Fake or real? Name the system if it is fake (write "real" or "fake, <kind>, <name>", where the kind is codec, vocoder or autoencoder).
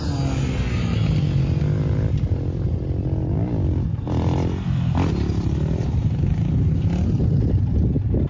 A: real